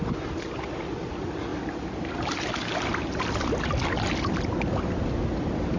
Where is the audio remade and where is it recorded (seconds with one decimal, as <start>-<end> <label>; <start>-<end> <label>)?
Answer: 0.0-5.8 recorded